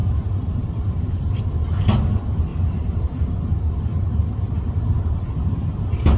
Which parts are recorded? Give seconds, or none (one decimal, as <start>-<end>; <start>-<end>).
1.4-2.5; 3.4-6.2